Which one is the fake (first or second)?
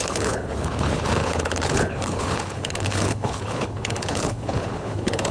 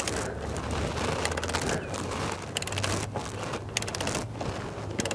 first